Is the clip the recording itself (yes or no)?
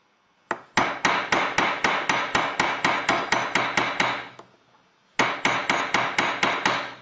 yes